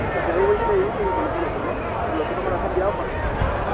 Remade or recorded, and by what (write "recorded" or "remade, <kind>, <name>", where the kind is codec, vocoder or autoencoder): recorded